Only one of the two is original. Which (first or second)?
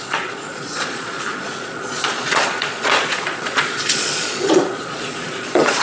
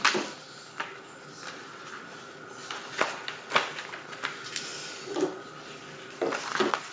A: second